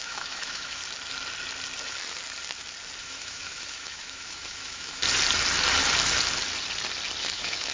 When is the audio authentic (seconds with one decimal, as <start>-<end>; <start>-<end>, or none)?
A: 0.8-3.0; 5.0-7.2